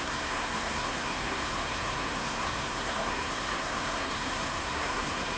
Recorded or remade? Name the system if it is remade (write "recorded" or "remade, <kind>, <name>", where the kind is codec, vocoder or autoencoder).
remade, codec, SNAC